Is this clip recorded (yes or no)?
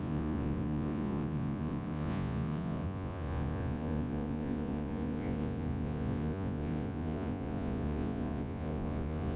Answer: no